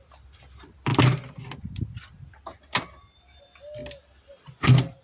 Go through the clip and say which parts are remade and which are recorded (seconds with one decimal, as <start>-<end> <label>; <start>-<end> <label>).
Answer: 0.0-5.0 recorded

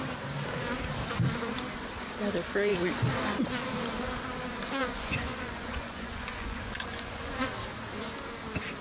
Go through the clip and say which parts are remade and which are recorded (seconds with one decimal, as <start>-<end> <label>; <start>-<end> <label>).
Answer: 0.0-4.8 recorded; 4.8-7.5 remade; 7.5-8.8 recorded